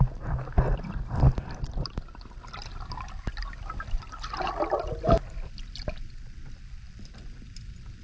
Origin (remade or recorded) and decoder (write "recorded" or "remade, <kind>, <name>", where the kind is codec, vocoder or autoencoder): recorded